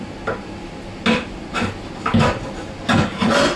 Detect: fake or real real